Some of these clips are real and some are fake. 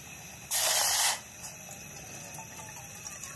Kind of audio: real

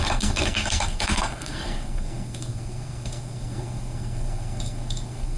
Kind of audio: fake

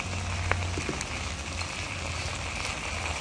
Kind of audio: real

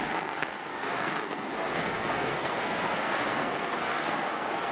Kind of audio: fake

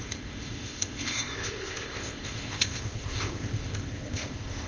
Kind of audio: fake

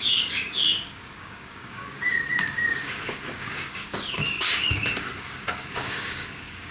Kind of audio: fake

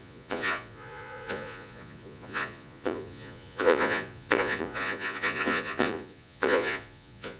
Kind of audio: fake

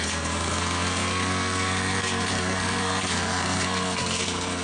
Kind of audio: fake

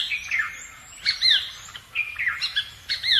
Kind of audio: real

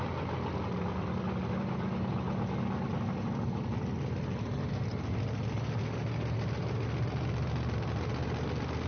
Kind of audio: real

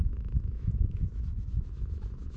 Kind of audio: fake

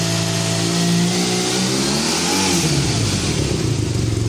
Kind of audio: real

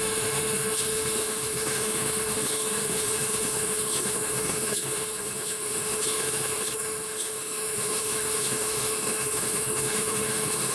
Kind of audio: fake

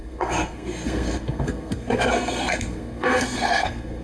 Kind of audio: fake